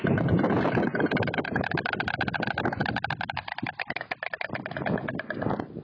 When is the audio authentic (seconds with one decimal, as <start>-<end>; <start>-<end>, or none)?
0.0-5.8